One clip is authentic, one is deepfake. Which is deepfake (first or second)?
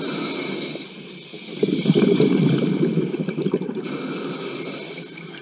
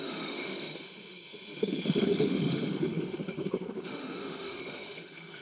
second